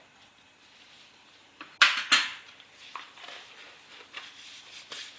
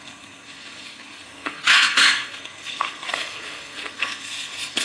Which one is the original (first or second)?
first